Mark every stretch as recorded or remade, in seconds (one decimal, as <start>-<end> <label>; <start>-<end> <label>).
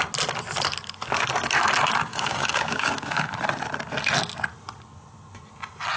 0.0-2.1 recorded; 2.1-3.2 remade; 3.2-6.0 recorded